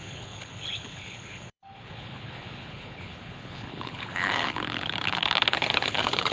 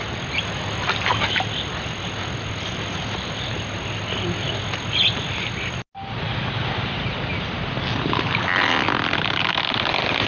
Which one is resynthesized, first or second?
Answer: first